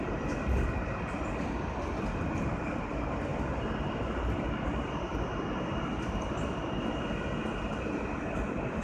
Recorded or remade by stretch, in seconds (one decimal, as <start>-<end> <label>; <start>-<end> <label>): 0.0-8.8 recorded